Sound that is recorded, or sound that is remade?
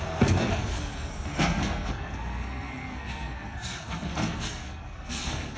remade